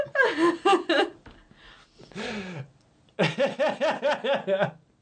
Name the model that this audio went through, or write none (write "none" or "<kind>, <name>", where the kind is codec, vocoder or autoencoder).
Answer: none